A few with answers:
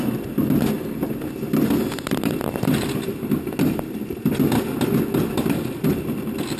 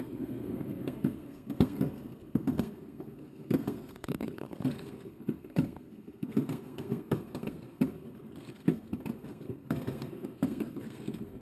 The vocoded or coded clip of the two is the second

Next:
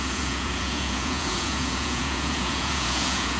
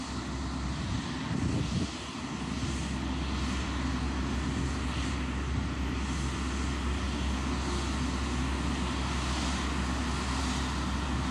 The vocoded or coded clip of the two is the first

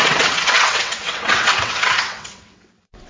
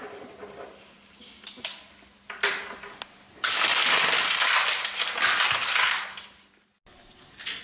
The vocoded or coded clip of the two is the first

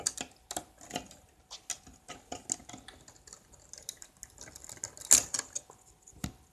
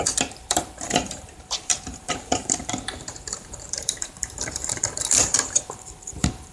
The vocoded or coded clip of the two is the second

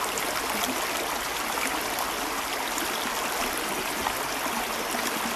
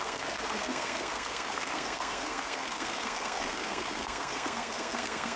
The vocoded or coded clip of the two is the second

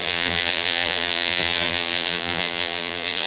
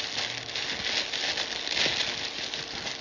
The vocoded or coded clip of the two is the first